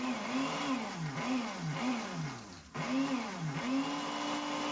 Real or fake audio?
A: real